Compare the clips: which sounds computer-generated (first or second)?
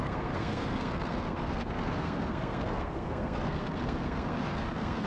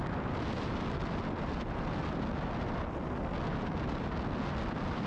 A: first